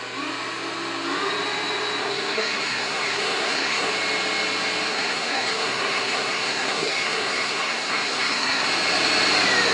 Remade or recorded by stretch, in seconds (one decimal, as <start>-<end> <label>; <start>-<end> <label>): 0.0-2.0 recorded; 2.0-3.9 remade; 3.9-4.9 recorded; 4.9-8.7 remade; 8.7-9.7 recorded